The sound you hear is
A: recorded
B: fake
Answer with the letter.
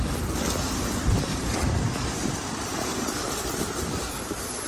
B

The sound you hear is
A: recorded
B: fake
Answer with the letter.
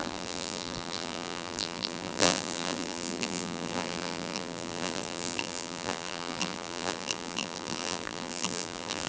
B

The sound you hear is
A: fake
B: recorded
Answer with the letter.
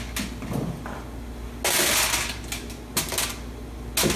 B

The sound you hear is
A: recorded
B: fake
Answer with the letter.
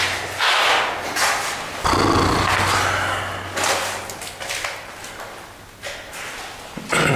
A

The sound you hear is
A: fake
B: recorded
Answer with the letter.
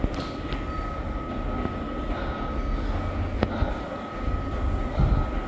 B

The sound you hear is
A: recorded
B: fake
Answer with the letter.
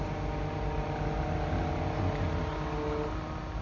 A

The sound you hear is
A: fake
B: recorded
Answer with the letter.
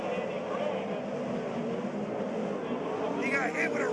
B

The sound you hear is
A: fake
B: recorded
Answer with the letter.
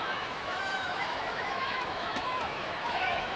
A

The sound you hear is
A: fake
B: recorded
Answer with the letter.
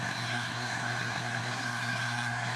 A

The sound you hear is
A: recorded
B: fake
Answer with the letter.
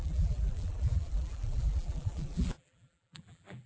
B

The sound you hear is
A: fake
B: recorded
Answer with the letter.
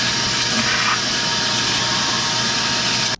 B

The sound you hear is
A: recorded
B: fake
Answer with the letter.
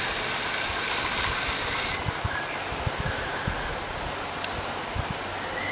A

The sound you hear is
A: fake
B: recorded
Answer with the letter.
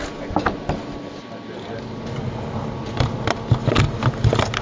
B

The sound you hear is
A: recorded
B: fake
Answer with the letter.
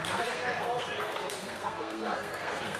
B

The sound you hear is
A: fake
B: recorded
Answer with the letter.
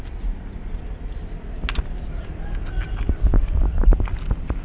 B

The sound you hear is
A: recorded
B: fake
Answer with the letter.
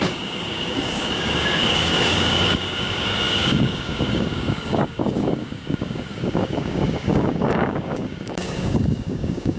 B